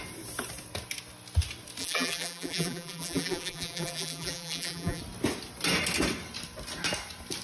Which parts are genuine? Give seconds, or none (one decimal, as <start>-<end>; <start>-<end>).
0.0-1.8; 5.0-7.4